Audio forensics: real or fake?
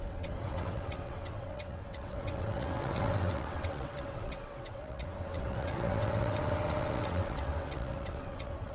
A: fake